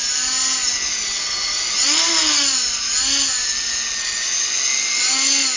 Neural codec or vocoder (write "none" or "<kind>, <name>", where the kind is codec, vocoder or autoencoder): none